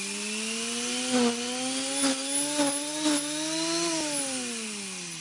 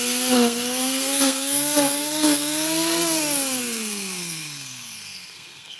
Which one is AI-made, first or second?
second